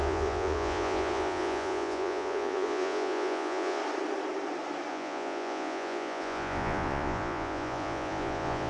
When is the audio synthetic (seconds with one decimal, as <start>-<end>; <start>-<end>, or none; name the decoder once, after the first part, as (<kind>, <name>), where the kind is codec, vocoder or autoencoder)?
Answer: 0.0-3.8 (vocoder, Vocos); 4.9-8.7